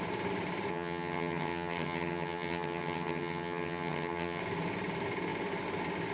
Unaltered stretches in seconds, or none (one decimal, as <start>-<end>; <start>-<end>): 0.0-0.7; 4.4-6.1